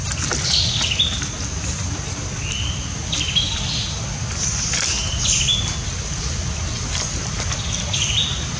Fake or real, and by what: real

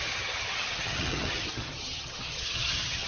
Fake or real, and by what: fake, vocoder, HiFi-GAN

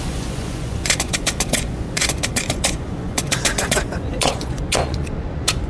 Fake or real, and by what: fake, vocoder, Vocos